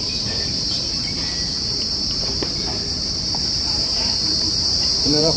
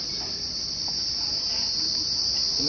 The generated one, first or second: first